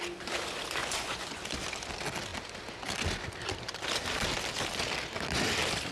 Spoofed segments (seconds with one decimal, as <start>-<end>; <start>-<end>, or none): 0.8-1.4